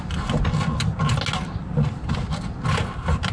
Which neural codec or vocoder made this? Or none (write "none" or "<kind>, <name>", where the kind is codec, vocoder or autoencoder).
none